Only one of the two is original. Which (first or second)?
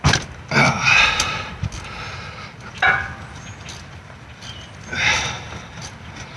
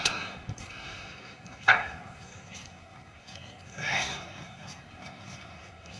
first